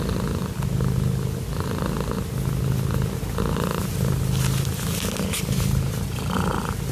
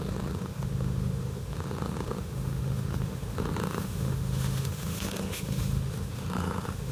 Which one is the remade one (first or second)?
second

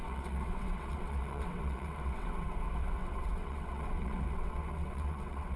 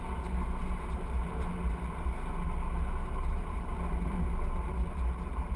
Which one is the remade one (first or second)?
first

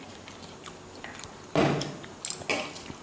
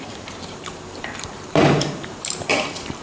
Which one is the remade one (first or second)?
second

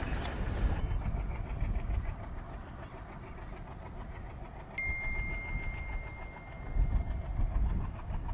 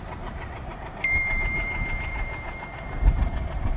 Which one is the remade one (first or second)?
second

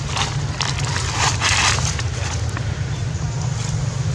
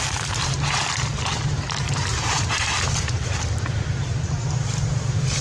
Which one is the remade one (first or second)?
second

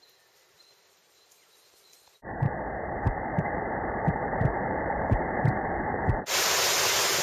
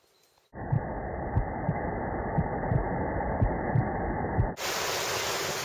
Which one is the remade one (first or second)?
first